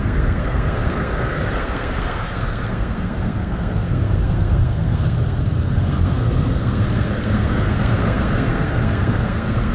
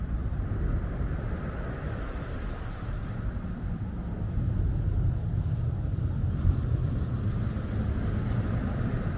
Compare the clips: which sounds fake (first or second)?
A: first